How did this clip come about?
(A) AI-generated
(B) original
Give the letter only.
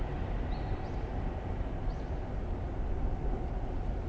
B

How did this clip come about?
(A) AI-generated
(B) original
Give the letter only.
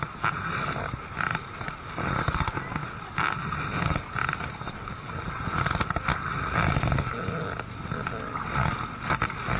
B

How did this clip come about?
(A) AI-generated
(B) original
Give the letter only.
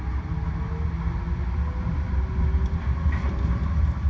B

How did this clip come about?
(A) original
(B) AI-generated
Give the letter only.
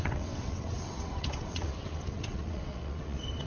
B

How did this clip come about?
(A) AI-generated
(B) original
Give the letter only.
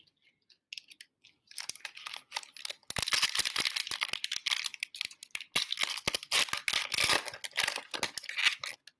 B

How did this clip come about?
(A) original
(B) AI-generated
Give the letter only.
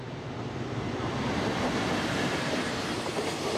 A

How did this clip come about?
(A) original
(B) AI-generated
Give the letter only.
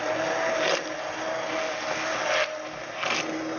A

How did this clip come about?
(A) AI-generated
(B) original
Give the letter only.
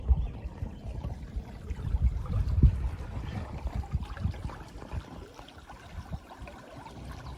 B